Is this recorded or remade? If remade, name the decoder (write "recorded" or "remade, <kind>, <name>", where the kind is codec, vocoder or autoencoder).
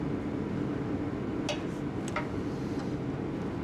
recorded